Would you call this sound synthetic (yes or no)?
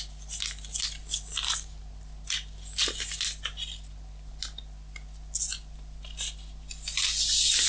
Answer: no